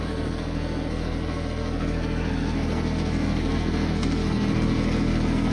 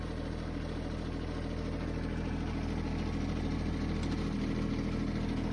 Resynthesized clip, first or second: first